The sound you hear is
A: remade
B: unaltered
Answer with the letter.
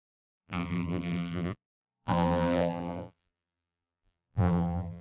A